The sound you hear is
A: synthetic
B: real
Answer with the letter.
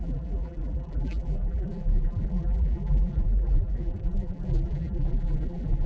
A